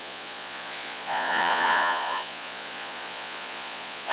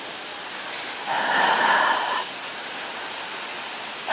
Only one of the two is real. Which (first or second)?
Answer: second